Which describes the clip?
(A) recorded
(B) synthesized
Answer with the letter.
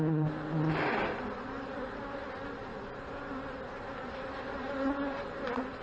A